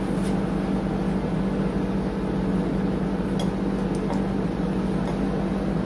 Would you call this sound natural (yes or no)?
yes